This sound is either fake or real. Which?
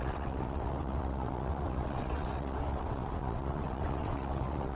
fake